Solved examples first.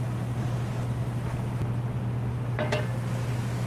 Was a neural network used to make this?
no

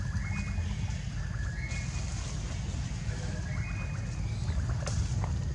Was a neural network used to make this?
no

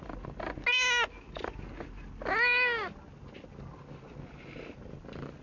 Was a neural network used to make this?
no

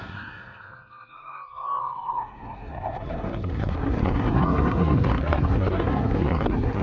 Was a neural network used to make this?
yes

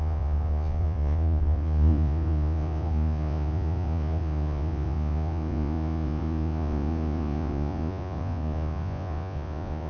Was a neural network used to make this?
yes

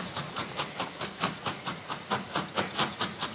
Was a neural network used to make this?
yes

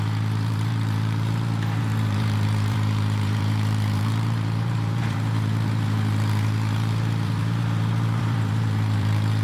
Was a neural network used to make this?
yes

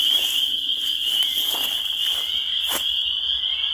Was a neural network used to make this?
no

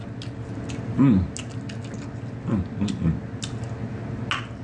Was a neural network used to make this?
no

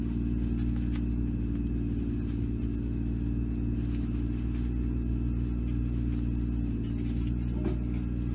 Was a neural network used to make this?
no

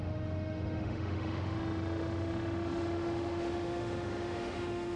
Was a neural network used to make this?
yes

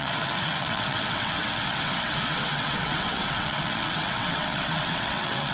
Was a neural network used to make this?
yes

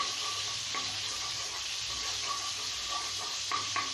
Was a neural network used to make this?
no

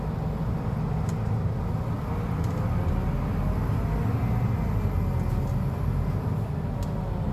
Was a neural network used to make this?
no